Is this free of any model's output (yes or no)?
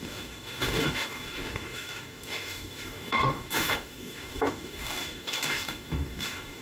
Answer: no